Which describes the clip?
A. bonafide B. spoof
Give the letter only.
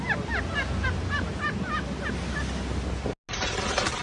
A